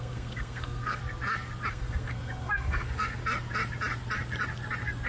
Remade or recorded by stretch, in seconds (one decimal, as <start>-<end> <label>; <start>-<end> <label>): 0.0-1.0 remade; 1.0-1.7 recorded; 1.7-3.2 remade; 3.2-5.1 recorded